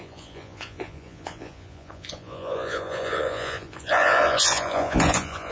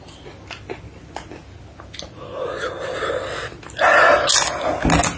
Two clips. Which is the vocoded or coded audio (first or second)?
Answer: first